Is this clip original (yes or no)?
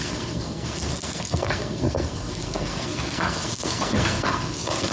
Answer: no